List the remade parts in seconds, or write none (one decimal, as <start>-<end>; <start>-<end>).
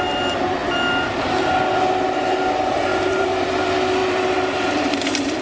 2.9-3.5; 4.0-5.4